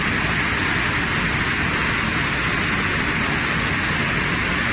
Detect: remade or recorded recorded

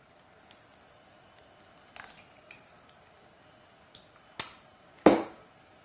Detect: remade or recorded recorded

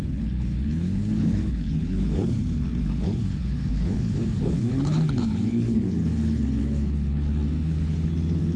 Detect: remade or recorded remade